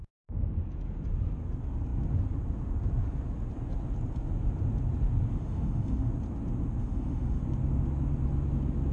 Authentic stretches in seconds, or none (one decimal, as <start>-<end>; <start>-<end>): 0.0-5.3; 6.1-6.8; 7.4-8.9